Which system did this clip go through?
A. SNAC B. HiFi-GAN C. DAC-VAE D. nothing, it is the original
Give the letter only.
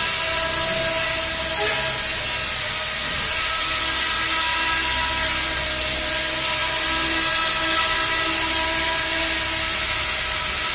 D